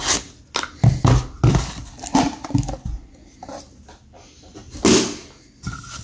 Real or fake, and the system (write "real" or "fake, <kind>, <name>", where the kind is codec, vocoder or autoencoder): real